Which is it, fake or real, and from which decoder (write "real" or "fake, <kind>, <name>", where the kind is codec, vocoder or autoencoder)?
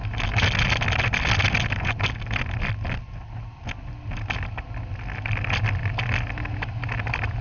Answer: real